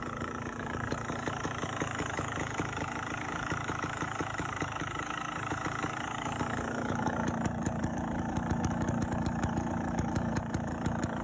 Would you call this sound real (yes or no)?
no